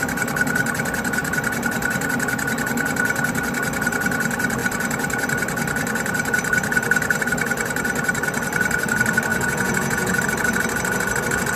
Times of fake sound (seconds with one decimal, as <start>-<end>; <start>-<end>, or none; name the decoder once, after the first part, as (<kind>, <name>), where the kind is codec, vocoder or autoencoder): 9.3-10.2 (vocoder, Vocos)

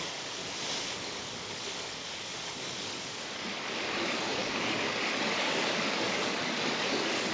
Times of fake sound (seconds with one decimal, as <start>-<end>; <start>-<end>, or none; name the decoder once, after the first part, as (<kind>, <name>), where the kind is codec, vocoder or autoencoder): 0.0-0.4 (codec, DAC); 0.9-7.3